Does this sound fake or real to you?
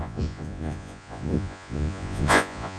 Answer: fake